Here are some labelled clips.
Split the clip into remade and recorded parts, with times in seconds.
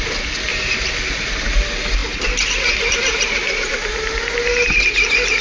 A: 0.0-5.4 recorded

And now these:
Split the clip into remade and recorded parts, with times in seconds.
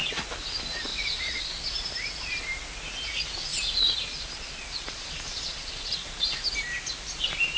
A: 0.0-0.9 recorded; 0.9-1.5 remade; 1.5-3.5 recorded; 3.5-6.3 remade; 6.3-7.6 recorded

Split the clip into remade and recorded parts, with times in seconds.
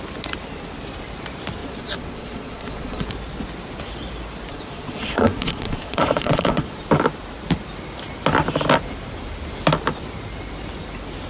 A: 0.0-1.6 recorded; 1.6-3.1 remade; 3.1-4.5 recorded; 4.5-6.8 remade; 6.8-11.3 recorded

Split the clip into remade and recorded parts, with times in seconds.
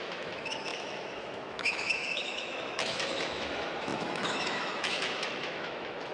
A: 0.0-6.1 remade